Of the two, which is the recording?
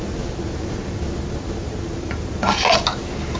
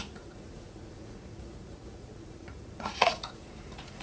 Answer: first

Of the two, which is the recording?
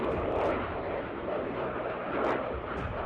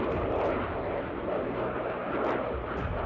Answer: second